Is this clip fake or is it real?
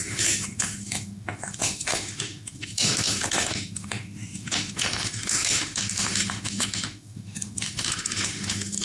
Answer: fake